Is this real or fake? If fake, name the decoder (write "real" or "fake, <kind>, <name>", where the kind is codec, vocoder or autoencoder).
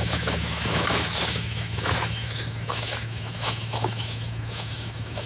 fake, autoencoder, DAC-VAE